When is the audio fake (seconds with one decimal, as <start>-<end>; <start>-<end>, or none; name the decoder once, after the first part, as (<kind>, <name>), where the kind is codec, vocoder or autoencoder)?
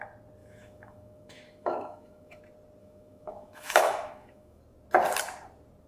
0.4-2.4 (autoencoder, DAC-VAE); 2.8-4.6